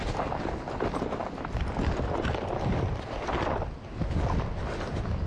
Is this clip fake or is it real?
real